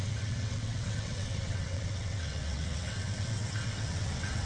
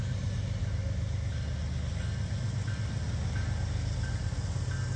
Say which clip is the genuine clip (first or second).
second